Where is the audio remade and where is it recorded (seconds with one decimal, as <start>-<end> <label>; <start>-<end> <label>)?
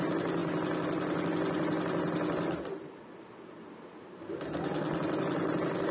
0.0-5.9 recorded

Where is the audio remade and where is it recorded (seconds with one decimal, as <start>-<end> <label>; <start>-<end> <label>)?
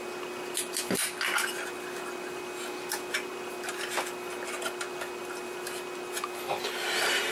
0.0-7.3 recorded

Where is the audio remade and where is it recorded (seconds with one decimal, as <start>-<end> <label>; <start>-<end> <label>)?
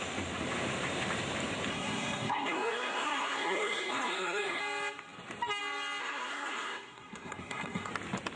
0.0-1.7 recorded; 1.7-4.6 remade; 4.6-6.0 recorded; 6.0-7.9 remade; 7.9-8.4 recorded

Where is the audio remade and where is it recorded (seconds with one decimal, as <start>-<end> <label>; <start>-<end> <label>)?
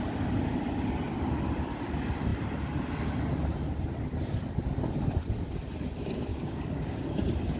0.0-6.3 recorded; 6.3-7.0 remade; 7.0-7.6 recorded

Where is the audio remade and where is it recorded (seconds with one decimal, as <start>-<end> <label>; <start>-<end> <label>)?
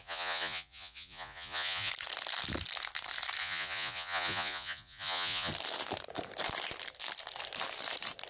0.0-1.9 remade; 1.9-3.4 recorded; 3.4-5.5 remade; 5.5-8.3 recorded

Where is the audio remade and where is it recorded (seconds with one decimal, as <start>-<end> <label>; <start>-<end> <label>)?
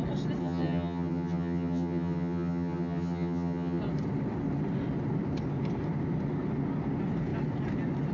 0.0-0.4 recorded; 0.4-3.8 remade; 3.8-8.1 recorded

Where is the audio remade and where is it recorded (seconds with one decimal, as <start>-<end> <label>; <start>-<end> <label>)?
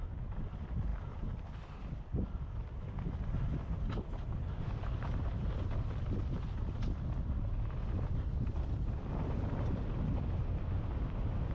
0.0-11.5 recorded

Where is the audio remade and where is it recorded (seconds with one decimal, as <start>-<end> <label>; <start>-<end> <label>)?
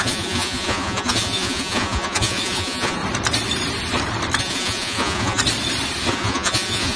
0.0-3.0 remade; 3.0-4.4 recorded; 4.4-5.4 remade; 5.4-6.1 recorded; 6.1-7.0 remade